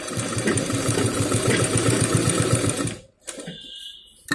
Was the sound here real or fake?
fake